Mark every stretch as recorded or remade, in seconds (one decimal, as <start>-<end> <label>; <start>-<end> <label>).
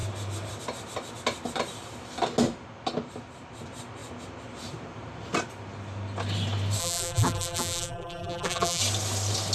0.0-6.8 recorded; 6.8-8.8 remade; 8.8-9.5 recorded